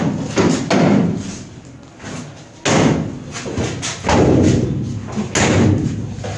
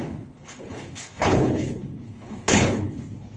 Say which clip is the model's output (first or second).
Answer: second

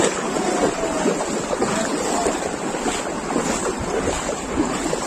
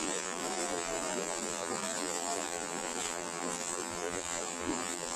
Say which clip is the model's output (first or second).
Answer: second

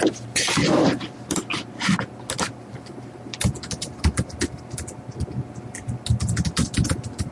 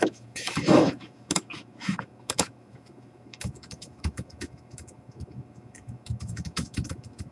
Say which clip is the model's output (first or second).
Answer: second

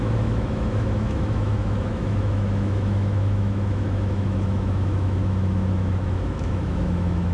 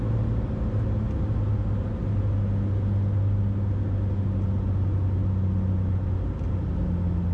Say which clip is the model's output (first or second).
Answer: first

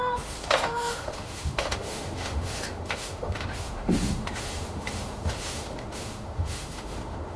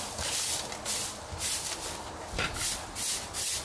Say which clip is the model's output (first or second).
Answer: first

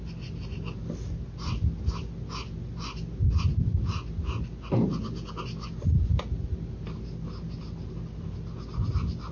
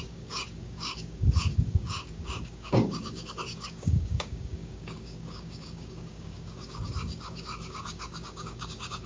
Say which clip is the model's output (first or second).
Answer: second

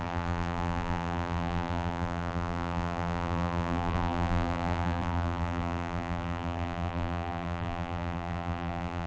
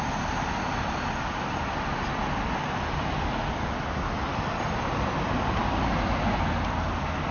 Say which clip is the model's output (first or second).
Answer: first